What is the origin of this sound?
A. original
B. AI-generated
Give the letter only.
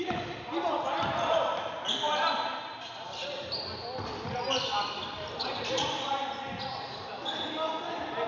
A